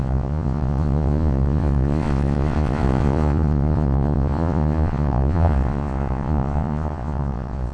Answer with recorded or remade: remade